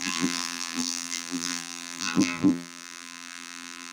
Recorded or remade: remade